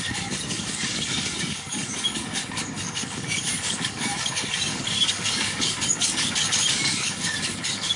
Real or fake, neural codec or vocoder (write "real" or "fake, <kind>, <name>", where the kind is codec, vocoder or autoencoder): fake, codec, DAC